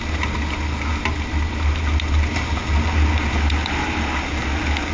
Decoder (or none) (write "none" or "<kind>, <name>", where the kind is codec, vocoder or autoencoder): none